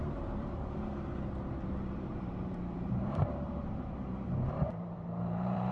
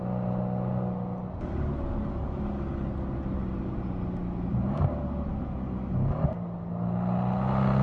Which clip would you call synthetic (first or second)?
first